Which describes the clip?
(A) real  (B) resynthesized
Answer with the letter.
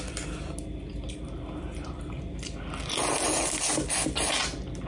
A